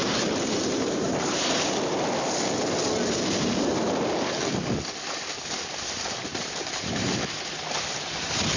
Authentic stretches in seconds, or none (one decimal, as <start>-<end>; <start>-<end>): 1.7-6.3; 7.2-8.6